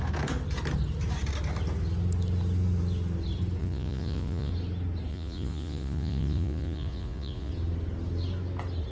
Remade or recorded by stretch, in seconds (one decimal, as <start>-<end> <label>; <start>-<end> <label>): 0.0-3.6 recorded; 3.6-4.5 remade; 4.5-5.1 recorded; 5.1-7.5 remade; 7.5-8.9 recorded